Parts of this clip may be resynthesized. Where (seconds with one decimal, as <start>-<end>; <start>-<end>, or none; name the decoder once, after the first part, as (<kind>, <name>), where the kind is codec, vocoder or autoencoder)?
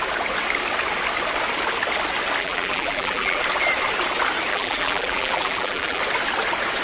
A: 2.4-3.4 (vocoder, BigVGAN v2); 4.5-6.0